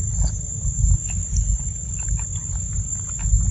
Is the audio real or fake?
real